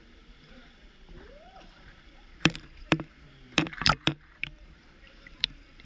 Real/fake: fake